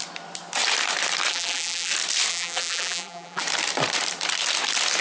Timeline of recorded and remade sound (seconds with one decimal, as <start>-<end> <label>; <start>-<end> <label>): 0.0-1.3 recorded; 1.3-1.9 remade; 1.9-2.3 recorded; 2.3-3.4 remade; 3.4-5.0 recorded